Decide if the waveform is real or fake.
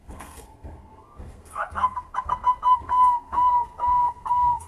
fake